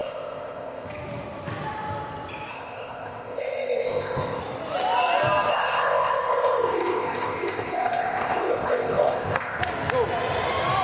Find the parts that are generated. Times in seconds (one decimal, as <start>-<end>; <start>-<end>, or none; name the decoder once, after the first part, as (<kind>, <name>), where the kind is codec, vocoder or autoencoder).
0.0-0.9 (codec, ZipCodec); 2.5-4.4; 5.5-9.6